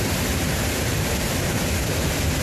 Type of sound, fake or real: real